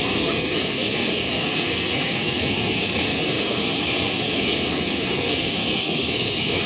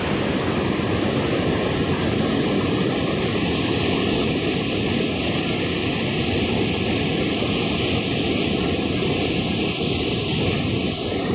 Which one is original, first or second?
second